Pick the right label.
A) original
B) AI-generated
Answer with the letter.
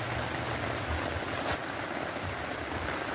A